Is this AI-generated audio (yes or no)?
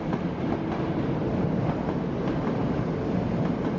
no